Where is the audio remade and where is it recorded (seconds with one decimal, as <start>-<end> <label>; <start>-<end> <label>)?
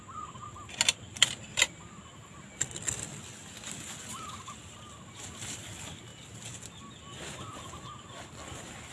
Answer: 0.0-8.9 recorded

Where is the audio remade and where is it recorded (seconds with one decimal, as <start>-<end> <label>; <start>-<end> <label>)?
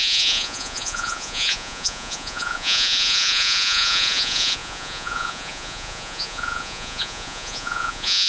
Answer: 0.0-8.3 remade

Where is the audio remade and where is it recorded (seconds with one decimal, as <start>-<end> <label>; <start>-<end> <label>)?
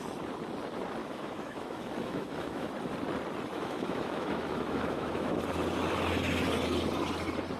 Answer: 0.0-1.0 recorded; 1.0-2.7 remade; 2.7-3.5 recorded; 3.5-5.4 remade; 5.4-7.6 recorded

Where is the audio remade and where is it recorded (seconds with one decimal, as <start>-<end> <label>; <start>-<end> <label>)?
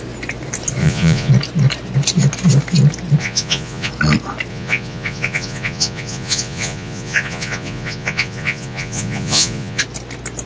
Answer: 0.0-0.8 recorded; 0.8-1.3 remade; 1.3-3.2 recorded; 3.2-3.9 remade; 3.9-4.5 recorded; 4.5-9.8 remade; 9.8-10.5 recorded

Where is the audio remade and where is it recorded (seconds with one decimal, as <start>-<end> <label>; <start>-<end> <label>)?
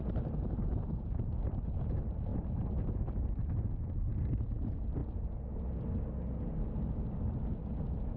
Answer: 0.0-2.3 remade; 2.3-2.9 recorded; 2.9-5.0 remade; 5.0-8.2 recorded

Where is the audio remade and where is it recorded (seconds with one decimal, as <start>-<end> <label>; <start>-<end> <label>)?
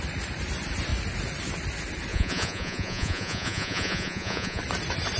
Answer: 0.0-2.1 recorded; 2.1-4.6 remade; 4.6-5.2 recorded